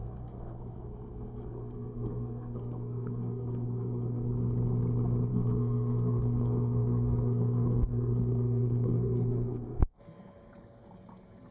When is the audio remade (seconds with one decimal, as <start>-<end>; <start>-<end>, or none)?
0.0-4.3; 5.3-10.0